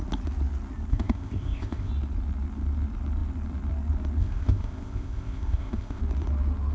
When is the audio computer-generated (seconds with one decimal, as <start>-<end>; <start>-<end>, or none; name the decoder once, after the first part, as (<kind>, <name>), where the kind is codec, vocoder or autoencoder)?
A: 0.9-1.9 (codec, ZipCodec); 4.2-6.0